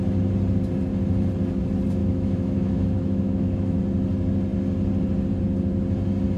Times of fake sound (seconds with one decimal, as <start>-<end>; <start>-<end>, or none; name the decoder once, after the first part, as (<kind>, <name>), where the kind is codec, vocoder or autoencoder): 2.0-3.8 (autoencoder, DAC-VAE)